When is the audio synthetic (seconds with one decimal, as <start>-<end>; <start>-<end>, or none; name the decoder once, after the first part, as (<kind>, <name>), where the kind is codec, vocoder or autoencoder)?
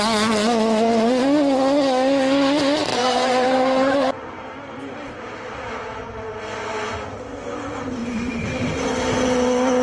2.9-5.8 (vocoder, BigVGAN v2); 8.0-9.1